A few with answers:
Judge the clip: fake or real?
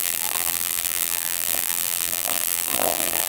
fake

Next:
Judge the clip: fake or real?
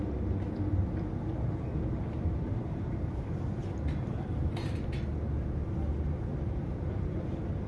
real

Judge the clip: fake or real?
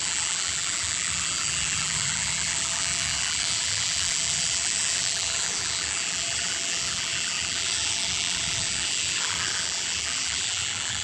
fake